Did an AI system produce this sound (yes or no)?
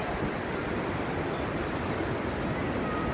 no